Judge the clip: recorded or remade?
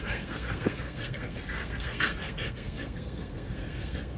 remade